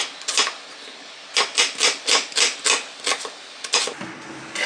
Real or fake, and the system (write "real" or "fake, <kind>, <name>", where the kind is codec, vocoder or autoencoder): real